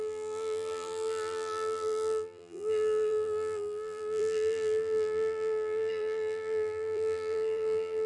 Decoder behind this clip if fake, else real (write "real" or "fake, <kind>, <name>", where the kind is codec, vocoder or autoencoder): fake, vocoder, BigVGAN v2